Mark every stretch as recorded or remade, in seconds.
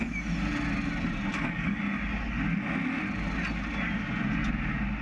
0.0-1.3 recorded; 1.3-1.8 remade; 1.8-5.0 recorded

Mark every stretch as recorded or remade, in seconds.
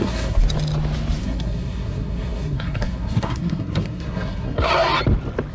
0.0-0.4 remade; 0.4-1.2 recorded; 1.2-4.7 remade; 4.7-5.5 recorded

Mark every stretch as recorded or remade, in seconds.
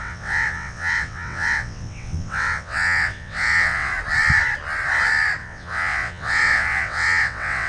0.0-3.9 remade; 3.9-5.4 recorded; 5.4-7.7 remade